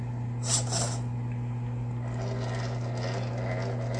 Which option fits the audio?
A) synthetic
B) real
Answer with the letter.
B